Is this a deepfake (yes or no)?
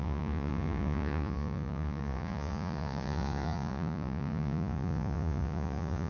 yes